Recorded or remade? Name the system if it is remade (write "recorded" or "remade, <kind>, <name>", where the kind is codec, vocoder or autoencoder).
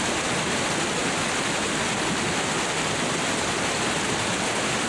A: recorded